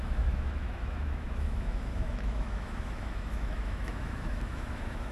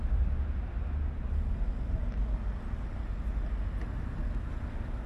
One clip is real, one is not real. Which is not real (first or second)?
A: first